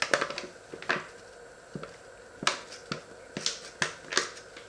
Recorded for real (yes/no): yes